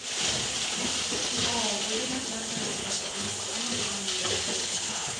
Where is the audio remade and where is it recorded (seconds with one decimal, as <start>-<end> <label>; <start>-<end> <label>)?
0.0-2.8 recorded; 2.8-3.3 remade; 3.3-4.6 recorded; 4.6-5.2 remade